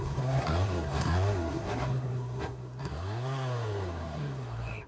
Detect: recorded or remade remade